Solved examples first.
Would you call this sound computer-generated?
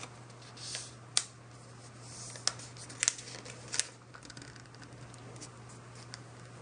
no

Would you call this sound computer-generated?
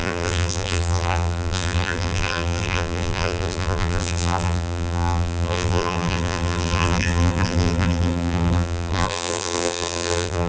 yes